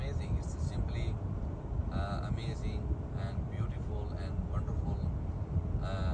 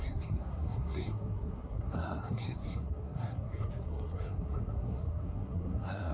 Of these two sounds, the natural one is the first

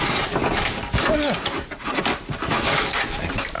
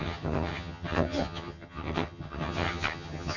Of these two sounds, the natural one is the first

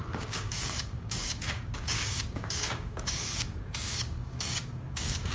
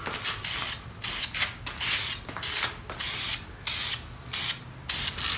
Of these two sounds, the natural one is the second